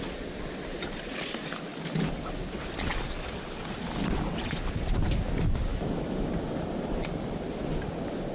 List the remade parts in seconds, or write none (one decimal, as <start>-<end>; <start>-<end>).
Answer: 5.7-6.3